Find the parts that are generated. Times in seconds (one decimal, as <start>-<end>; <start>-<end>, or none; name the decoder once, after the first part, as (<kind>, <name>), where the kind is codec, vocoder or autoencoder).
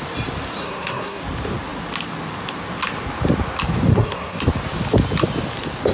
0.6-1.2 (codec, SNAC); 3.9-4.4